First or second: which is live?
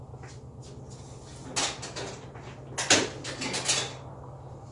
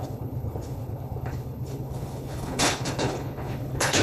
first